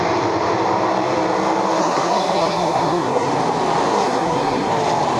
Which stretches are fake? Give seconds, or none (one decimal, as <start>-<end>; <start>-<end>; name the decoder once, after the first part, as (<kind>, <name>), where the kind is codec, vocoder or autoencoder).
1.8-3.3 (codec, SNAC); 3.9-4.7